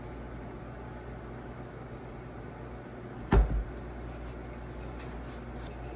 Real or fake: real